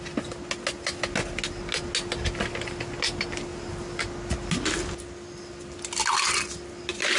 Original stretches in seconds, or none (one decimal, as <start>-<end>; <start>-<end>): 0.0-7.2